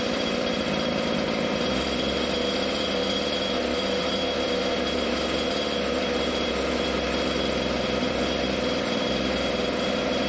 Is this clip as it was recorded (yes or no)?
no